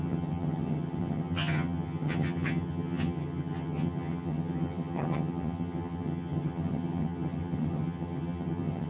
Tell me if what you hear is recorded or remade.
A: remade